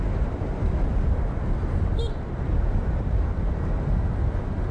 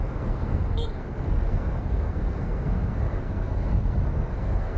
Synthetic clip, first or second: second